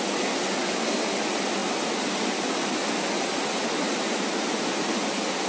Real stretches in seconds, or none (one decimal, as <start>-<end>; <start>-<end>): 0.0-5.5